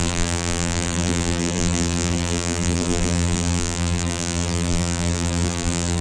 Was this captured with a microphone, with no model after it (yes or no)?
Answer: no